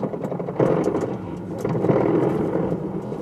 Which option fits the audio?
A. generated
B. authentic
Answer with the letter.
B